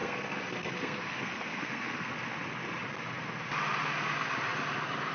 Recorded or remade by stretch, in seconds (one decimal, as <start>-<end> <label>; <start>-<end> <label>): 0.0-2.1 remade; 2.1-5.1 recorded